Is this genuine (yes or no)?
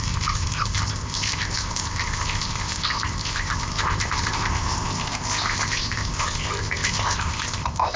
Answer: no